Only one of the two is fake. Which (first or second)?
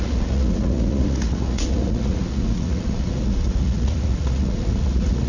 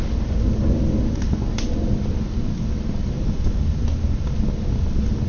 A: first